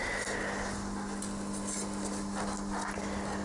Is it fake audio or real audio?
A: real